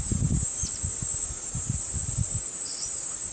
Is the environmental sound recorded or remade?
recorded